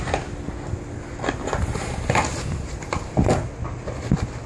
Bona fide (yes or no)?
yes